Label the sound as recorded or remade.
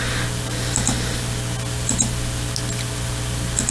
recorded